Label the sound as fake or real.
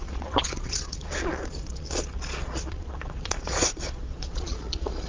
fake